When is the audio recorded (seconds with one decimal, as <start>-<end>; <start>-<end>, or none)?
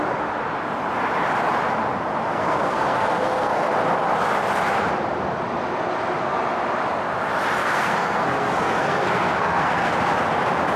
0.0-2.3; 3.7-7.6; 9.9-10.8